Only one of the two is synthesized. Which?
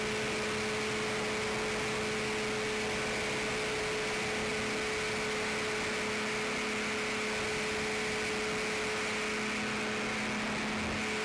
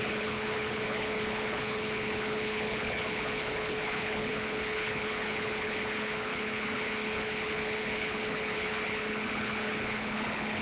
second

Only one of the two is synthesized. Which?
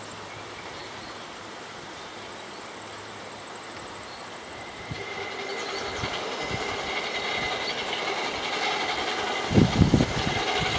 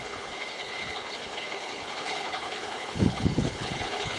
second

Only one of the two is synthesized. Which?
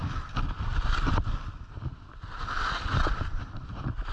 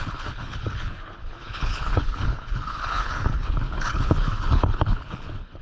second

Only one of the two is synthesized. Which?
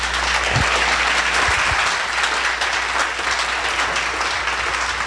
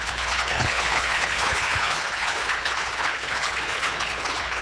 second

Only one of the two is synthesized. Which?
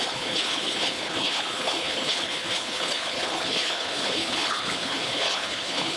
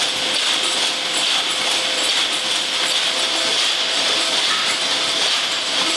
first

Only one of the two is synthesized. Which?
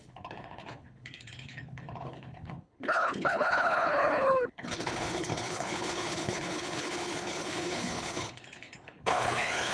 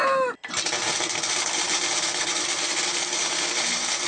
first